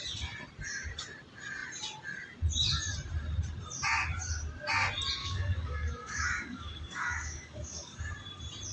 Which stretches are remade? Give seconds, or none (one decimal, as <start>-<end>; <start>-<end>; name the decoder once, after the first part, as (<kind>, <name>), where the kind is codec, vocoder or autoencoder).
5.2-8.0 (codec, DAC)